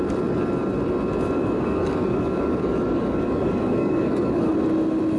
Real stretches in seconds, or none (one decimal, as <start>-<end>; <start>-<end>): 0.0-1.4; 4.5-5.2